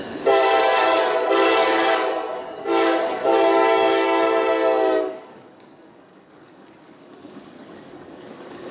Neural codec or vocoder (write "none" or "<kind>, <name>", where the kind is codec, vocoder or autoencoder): codec, DAC